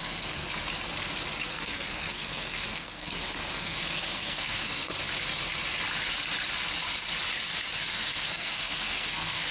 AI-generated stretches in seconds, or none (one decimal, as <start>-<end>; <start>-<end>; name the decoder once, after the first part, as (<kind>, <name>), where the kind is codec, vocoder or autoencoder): 0.0-0.4 (codec, SNAC); 1.5-4.9; 7.9-9.5